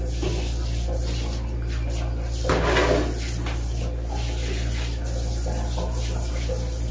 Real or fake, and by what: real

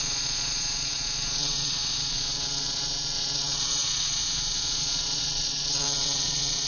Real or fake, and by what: fake, vocoder, Vocos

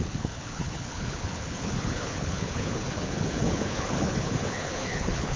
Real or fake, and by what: fake, codec, HILCodec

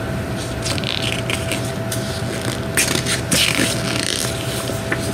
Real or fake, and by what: real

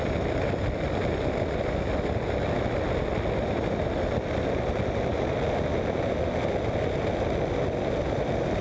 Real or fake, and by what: real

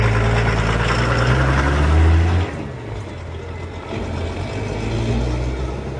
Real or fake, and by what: real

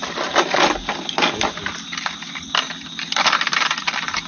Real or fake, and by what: real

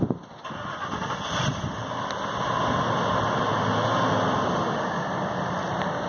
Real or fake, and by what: real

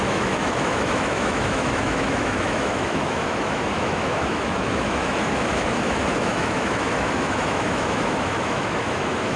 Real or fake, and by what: fake, autoencoder, DAC-VAE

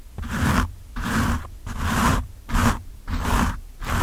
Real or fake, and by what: fake, vocoder, BigVGAN v2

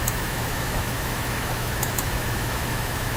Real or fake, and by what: fake, autoencoder, DAC-VAE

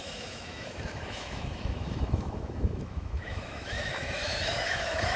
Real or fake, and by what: fake, autoencoder, DAC-VAE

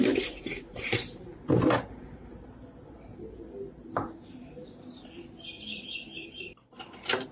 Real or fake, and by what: real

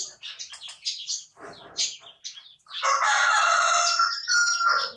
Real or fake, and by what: real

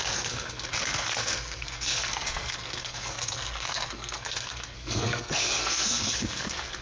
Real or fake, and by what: fake, codec, SNAC